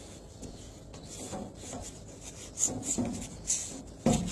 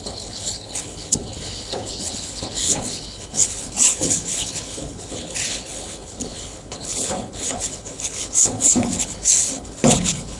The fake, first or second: second